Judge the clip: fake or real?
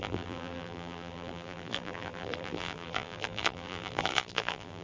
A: fake